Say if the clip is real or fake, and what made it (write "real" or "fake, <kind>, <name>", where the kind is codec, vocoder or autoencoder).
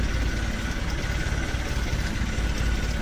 real